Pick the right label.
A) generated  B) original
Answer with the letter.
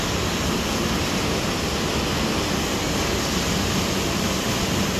B